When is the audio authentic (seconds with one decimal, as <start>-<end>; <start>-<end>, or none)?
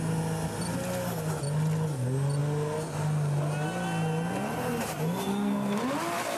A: 0.0-5.3; 5.8-6.4